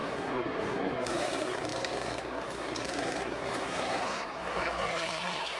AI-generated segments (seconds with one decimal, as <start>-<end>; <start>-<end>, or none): 0.0-5.6